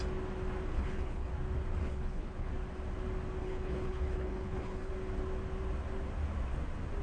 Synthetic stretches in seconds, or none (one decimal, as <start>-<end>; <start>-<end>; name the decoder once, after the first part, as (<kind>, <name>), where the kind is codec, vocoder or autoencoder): 0.7-1.3 (codec, HILCodec); 1.8-2.5; 3.4-4.9